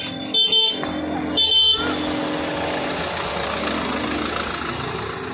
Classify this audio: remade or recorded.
recorded